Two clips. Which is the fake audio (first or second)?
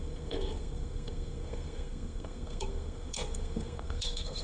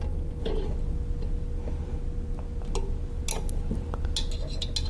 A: first